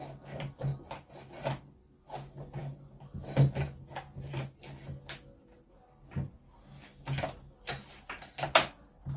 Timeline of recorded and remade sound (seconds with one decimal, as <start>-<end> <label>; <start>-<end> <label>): 0.0-9.2 recorded